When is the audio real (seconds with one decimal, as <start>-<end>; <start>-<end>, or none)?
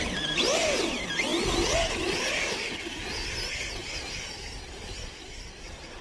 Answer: 0.0-6.0